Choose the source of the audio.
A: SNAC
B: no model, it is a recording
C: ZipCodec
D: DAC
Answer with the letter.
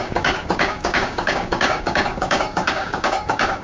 D